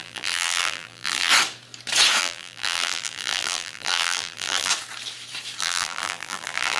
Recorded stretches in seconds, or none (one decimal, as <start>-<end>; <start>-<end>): 1.3-2.2; 4.7-5.6